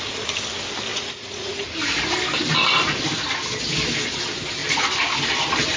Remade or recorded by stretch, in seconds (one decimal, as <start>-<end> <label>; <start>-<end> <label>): 0.0-0.9 recorded; 0.9-1.7 remade; 1.7-5.8 recorded